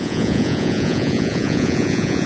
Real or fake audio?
fake